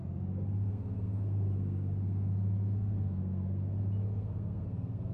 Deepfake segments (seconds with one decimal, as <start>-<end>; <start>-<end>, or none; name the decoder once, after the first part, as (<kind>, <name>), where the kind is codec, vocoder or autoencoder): 0.7-3.8 (codec, SNAC); 4.2-5.1